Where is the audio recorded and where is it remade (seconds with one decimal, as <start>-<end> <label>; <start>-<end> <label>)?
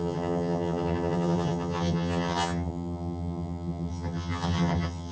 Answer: 0.0-5.1 remade